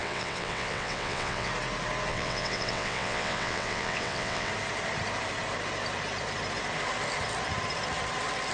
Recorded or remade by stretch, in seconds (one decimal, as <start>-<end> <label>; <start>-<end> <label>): 0.0-1.5 remade; 1.5-2.1 recorded; 2.1-4.5 remade; 4.5-8.5 recorded